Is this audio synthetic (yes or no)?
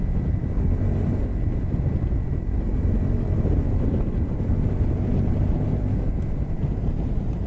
yes